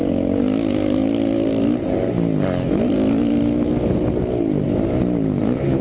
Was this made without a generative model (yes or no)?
yes